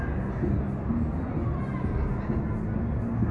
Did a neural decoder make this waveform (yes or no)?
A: no